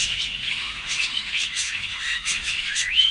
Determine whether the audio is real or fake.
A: fake